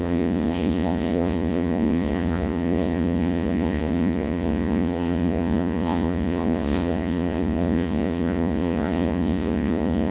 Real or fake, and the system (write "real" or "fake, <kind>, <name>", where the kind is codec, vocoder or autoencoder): fake, vocoder, Vocos